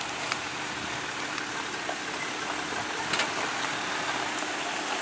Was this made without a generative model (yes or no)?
yes